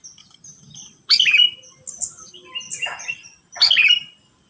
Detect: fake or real real